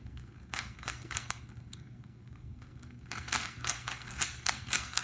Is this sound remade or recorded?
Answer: remade